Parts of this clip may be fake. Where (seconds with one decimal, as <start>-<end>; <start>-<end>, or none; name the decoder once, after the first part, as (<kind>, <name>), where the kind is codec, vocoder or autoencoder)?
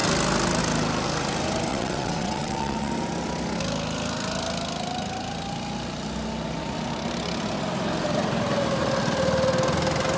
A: 1.7-2.9 (vocoder, WaveNeXt)